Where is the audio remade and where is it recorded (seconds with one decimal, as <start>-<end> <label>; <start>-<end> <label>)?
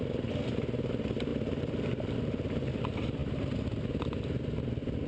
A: 0.0-5.1 recorded